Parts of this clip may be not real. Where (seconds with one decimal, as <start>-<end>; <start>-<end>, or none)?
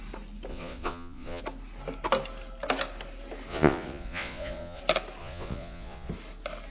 0.5-1.4; 3.5-4.8; 5.2-6.1